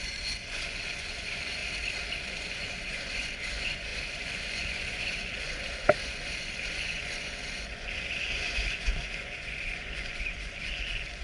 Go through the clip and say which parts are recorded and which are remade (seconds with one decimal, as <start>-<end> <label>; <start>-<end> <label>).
0.0-1.6 remade; 1.6-2.3 recorded; 2.3-11.2 remade